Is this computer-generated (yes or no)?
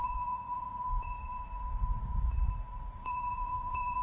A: yes